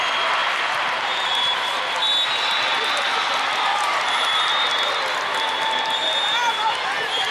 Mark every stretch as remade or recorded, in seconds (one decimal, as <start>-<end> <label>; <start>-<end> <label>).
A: 0.0-0.4 recorded; 0.4-1.8 remade; 1.8-7.3 recorded